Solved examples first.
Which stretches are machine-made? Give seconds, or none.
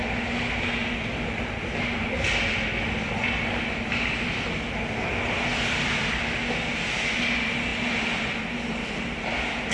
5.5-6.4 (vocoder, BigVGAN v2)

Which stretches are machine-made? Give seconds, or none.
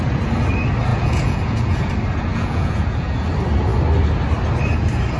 0.9-1.9 (vocoder, Vocos); 2.3-3.3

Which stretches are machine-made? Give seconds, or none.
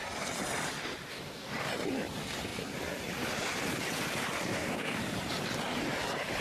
1.1-1.7 (codec, DAC); 4.5-5.0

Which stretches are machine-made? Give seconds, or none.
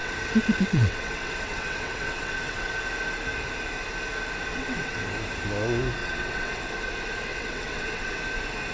0.0-2.7 (vocoder, WaveNeXt); 4.5-5.0; 6.0-6.6; 7.3-8.2